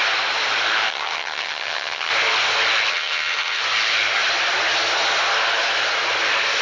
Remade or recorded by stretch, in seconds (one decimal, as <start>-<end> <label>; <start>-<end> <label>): 0.0-0.9 recorded; 0.9-2.1 remade; 2.1-2.9 recorded; 2.9-3.6 remade; 3.6-6.6 recorded

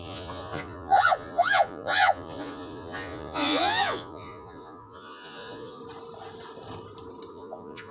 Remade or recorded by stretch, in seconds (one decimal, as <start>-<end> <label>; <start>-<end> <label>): 0.0-5.8 remade; 5.8-7.3 recorded; 7.3-7.9 remade

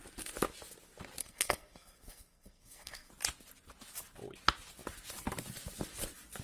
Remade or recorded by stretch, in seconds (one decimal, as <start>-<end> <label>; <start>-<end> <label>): 0.0-1.2 recorded; 1.2-3.1 remade; 3.1-6.4 recorded

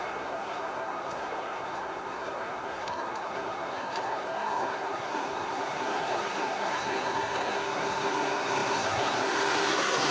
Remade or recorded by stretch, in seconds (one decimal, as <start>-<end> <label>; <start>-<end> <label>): 0.0-10.1 remade

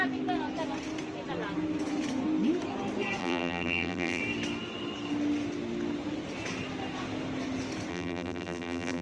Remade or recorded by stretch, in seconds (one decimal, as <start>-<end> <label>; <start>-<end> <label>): 0.0-3.2 recorded; 3.2-4.2 remade; 4.2-7.9 recorded; 7.9-9.0 remade